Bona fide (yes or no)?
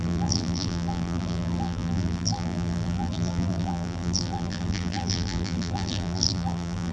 no